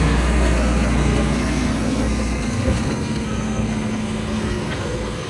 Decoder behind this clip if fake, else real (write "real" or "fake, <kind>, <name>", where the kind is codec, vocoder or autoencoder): fake, codec, SNAC